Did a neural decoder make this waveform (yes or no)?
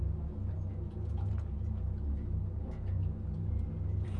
yes